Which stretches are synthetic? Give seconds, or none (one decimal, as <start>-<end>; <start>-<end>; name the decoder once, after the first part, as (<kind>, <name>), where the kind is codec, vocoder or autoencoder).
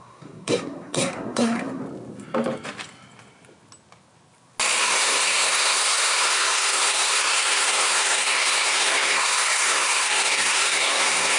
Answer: 0.0-1.8 (codec, SNAC); 4.8-11.4